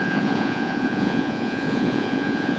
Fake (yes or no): yes